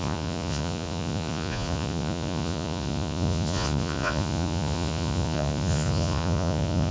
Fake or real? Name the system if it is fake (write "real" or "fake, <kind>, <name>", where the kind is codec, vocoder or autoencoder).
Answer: fake, vocoder, Vocos